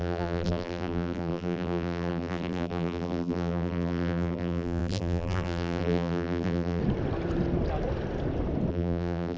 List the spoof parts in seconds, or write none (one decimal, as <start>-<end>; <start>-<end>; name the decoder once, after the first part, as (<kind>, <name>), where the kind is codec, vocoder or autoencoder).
0.0-6.8 (vocoder, BigVGAN v2); 8.7-9.4